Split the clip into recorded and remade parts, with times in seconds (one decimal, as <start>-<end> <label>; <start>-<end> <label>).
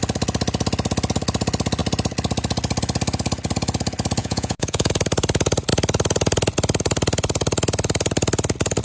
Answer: 0.0-4.2 recorded; 4.2-4.9 remade; 4.9-8.8 recorded